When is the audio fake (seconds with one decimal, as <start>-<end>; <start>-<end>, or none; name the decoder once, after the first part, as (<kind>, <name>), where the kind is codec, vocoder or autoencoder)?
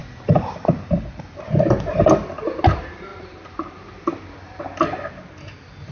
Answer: none